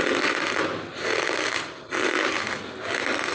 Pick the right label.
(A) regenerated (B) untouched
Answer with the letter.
B